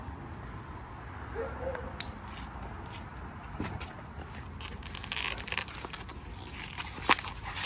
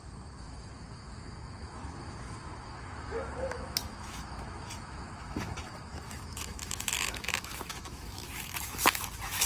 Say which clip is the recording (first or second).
first